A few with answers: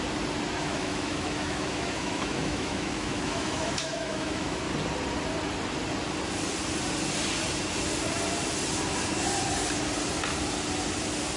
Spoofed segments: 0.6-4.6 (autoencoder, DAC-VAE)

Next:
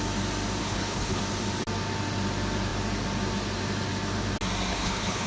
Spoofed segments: 0.6-1.2 (codec, HILCodec); 4.7-5.3

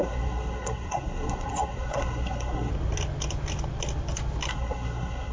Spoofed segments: 0.0-2.7 (codec, SNAC); 4.5-5.3

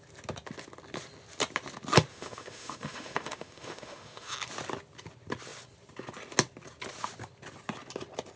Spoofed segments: 2.1-4.3 (autoencoder, DAC-VAE)

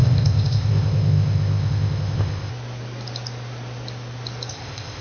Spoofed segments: 0.0-2.5 (codec, ZipCodec); 4.5-5.0

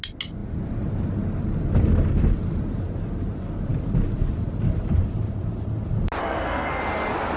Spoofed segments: 6.2-6.8 (codec, SNAC)

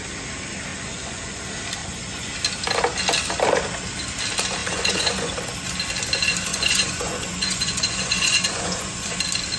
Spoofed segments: 0.7-1.4 (vocoder, Vocos); 1.8-2.3; 4.6-5.3; 6.5-9.1